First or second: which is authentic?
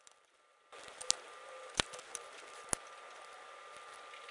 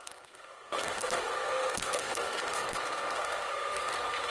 first